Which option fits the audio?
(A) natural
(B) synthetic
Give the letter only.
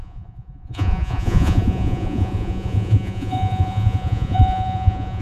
B